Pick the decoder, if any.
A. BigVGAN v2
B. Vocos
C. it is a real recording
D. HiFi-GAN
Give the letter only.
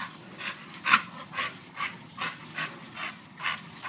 C